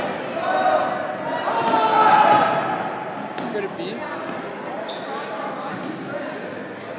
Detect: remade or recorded recorded